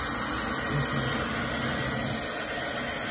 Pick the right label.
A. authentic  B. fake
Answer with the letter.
A